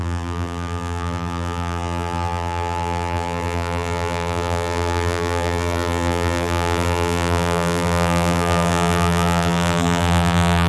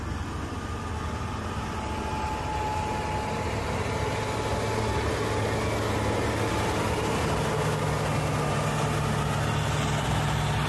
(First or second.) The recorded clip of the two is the second